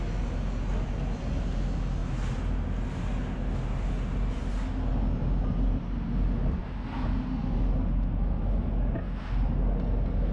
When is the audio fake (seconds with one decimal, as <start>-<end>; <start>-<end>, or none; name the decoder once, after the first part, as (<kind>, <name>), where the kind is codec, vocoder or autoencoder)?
none